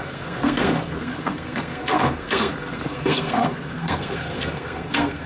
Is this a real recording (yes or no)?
no